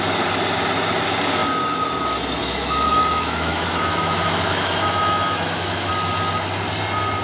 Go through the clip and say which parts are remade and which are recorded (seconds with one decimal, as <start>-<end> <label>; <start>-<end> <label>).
0.0-2.4 recorded; 2.4-5.9 remade; 5.9-7.2 recorded